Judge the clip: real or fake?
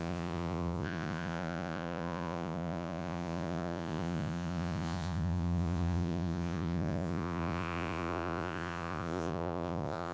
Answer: fake